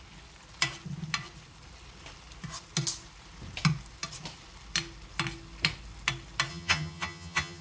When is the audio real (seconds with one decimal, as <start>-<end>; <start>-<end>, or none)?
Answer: 0.0-6.5